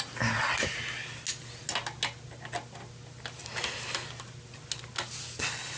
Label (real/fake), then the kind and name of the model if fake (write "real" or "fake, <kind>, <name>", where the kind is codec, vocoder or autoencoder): real